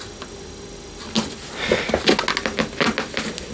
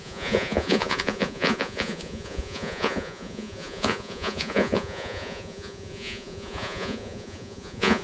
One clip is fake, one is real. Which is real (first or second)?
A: first